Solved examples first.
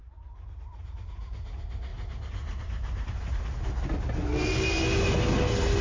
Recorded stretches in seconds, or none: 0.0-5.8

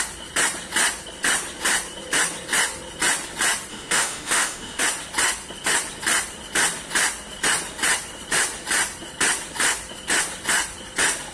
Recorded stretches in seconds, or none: 0.0-3.7; 4.8-11.3

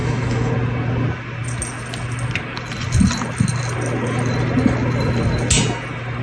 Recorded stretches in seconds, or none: 0.5-6.2

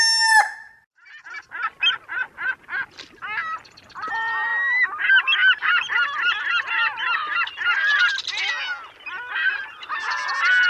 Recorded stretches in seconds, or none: 0.0-10.7